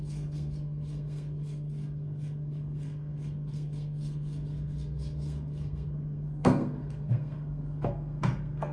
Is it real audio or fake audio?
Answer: fake